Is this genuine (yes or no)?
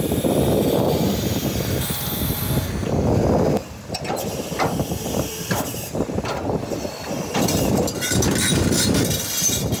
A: yes